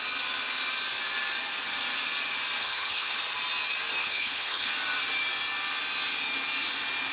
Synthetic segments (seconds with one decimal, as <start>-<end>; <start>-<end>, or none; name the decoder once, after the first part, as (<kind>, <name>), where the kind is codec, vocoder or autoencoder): 2.6-3.2 (codec, HILCodec); 4.0-4.7